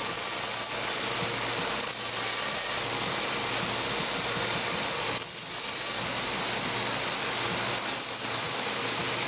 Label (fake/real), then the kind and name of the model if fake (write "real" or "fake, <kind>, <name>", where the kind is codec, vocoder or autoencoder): real